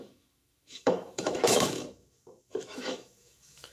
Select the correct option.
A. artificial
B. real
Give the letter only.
A